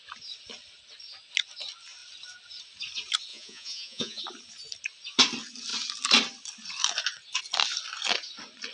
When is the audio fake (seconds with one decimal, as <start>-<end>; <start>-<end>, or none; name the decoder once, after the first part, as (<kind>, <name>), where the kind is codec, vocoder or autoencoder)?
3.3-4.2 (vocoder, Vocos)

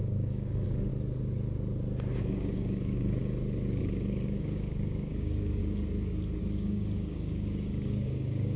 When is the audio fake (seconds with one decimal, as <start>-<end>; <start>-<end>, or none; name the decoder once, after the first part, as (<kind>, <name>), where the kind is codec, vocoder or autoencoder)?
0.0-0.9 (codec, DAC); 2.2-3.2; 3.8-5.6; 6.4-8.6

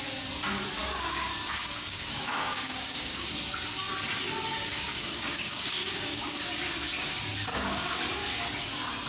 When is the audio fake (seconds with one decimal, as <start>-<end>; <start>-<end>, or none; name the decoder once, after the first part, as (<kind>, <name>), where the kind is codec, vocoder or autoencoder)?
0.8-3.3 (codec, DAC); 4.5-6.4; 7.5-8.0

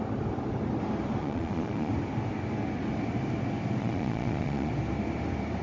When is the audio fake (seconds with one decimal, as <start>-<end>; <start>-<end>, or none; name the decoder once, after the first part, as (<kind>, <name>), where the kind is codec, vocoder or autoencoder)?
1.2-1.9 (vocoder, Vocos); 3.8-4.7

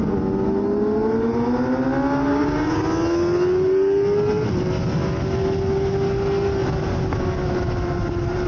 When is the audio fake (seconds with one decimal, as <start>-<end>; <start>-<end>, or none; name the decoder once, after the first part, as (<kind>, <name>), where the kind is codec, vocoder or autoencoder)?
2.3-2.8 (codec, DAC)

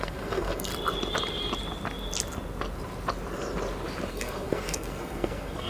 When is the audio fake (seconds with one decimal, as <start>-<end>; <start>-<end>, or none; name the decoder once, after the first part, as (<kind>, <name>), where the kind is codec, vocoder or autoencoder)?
0.0-0.7 (codec, SNAC); 4.1-5.7